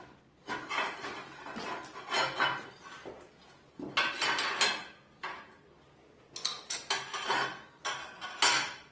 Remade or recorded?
recorded